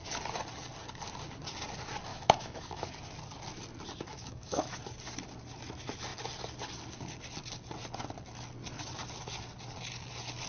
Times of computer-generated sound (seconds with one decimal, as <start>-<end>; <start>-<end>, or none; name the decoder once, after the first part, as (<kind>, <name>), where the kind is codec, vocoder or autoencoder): 2.1-2.9 (autoencoder, DAC-VAE); 4.1-4.8